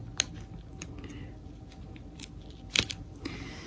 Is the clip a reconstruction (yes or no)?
no